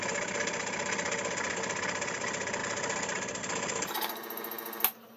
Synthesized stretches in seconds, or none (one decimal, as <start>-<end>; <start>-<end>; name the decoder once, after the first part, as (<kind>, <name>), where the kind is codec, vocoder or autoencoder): none